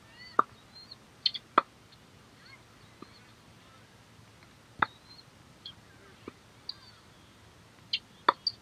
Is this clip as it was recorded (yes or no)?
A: yes